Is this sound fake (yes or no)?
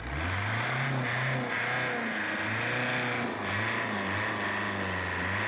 no